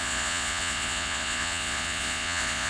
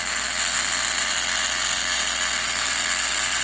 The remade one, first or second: first